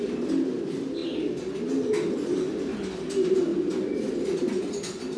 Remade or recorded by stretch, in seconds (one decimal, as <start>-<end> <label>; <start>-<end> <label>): 0.0-5.2 recorded